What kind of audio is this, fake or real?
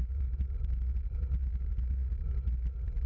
real